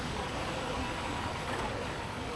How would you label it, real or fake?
fake